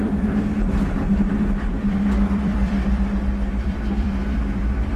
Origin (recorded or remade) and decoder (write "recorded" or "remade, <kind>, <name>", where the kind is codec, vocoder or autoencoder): remade, vocoder, BigVGAN v2